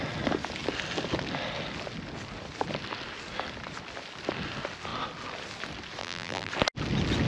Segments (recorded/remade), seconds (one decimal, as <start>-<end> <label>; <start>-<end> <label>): 0.0-6.0 recorded; 6.0-6.5 remade; 6.5-7.3 recorded